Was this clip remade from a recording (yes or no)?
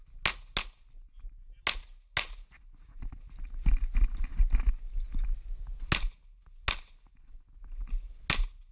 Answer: no